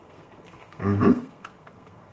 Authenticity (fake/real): fake